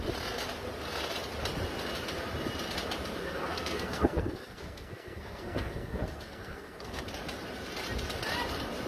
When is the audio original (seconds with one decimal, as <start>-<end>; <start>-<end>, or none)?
0.0-3.2; 7.0-8.9